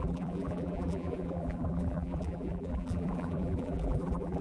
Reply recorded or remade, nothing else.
remade